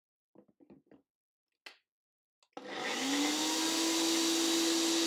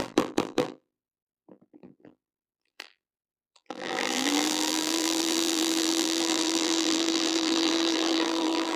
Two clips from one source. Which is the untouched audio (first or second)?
first